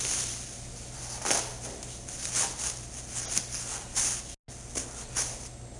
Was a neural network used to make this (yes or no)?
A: no